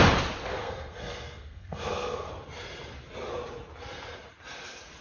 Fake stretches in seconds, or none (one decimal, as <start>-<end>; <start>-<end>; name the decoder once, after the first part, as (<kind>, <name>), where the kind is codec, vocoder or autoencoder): 0.6-2.3 (codec, SNAC)